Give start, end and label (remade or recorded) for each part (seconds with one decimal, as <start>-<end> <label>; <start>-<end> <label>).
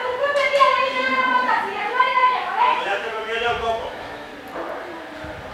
0.0-1.8 recorded; 1.8-4.3 remade; 4.3-5.5 recorded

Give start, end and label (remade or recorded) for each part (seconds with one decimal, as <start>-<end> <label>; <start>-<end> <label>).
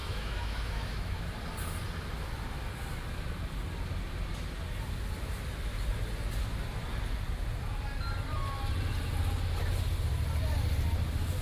0.0-1.2 remade; 1.2-11.4 recorded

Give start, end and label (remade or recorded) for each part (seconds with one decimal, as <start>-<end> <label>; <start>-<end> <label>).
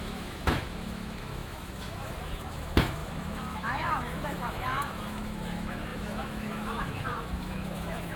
0.0-8.2 remade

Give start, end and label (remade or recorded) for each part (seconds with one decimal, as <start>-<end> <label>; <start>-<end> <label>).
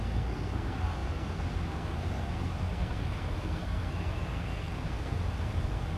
0.0-6.0 remade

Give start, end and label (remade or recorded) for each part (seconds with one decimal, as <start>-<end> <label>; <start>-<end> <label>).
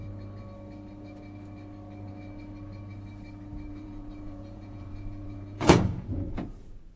0.0-3.7 recorded; 3.7-7.0 remade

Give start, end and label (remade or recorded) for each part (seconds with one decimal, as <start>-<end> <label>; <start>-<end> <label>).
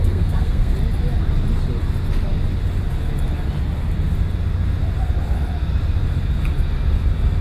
0.0-0.7 remade; 0.7-7.4 recorded